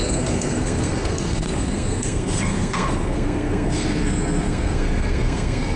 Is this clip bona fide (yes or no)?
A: no